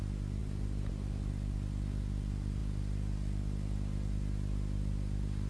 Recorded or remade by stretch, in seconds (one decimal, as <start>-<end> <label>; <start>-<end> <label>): 0.0-5.5 recorded